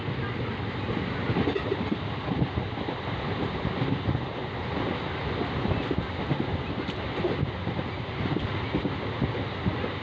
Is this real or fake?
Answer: real